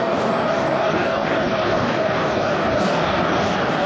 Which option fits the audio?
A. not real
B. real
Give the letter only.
A